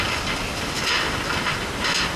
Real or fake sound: real